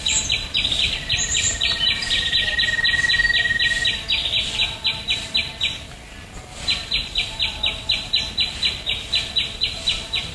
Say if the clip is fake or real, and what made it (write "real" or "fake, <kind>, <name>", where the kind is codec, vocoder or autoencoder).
fake, vocoder, BigVGAN v2